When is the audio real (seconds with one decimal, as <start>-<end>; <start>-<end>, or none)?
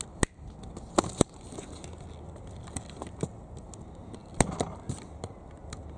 0.0-6.0